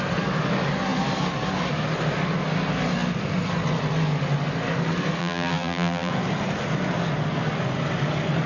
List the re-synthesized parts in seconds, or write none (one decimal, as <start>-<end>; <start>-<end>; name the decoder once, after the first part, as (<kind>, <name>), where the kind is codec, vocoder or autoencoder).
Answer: 5.2-6.1 (vocoder, BigVGAN v2)